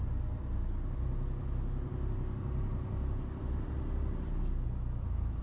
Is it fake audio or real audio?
real